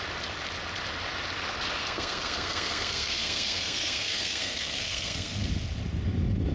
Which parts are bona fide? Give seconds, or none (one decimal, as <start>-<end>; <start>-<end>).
0.0-1.8; 5.5-6.5